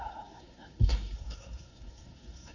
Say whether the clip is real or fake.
fake